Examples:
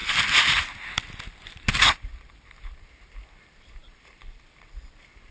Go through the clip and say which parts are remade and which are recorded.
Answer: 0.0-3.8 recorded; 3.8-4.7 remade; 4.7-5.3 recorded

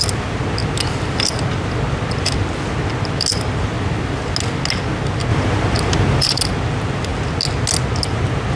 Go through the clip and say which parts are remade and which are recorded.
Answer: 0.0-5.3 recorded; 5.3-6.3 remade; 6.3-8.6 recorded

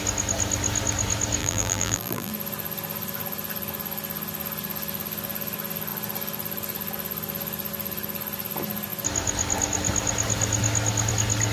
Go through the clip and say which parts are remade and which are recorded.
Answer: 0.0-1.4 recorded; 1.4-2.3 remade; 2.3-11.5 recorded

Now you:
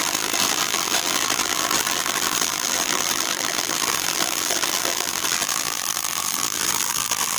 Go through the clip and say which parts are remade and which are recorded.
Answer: 0.0-7.4 remade

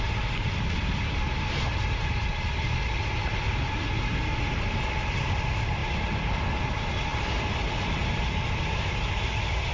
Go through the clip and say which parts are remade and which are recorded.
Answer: 0.0-9.7 recorded